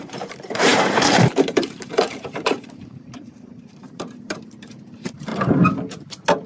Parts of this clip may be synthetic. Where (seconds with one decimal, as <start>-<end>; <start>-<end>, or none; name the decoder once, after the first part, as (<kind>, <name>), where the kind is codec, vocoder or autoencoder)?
0.0-5.3 (vocoder, BigVGAN v2)